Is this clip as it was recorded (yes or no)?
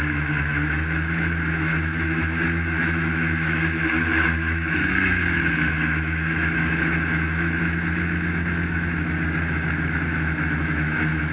no